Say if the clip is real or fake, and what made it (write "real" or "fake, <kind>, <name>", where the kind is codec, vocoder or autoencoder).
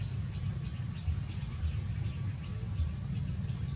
real